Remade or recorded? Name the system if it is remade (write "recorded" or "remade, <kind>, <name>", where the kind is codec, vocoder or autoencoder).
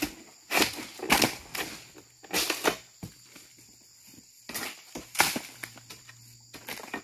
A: recorded